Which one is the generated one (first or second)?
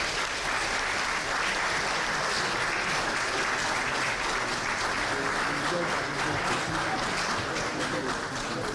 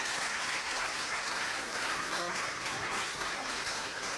second